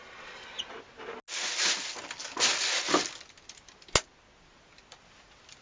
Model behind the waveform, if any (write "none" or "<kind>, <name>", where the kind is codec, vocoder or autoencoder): none